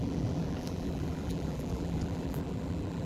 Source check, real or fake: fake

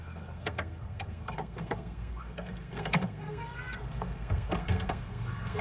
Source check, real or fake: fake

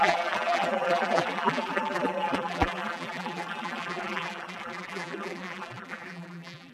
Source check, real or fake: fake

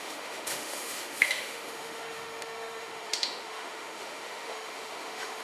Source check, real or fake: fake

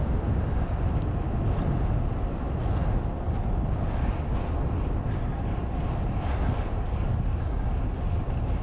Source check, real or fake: real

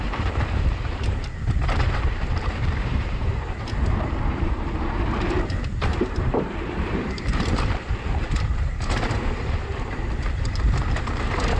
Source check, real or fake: fake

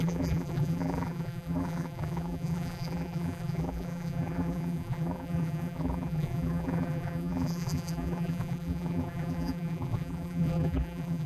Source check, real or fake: fake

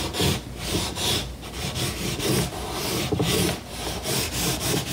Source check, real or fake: fake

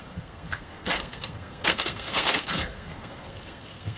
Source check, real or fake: fake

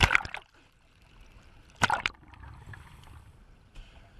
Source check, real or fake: fake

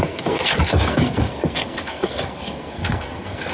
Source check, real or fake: fake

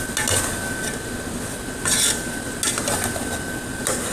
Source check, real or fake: real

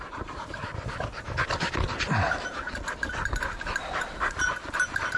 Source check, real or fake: real